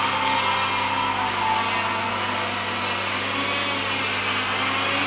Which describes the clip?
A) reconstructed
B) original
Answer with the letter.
B